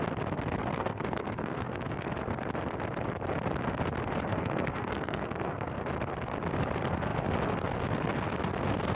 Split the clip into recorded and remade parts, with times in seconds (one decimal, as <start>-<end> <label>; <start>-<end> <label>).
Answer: 0.0-0.6 recorded; 0.6-1.9 remade; 1.9-4.3 recorded; 4.3-5.8 remade; 5.8-9.0 recorded